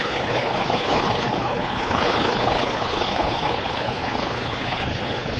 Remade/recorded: remade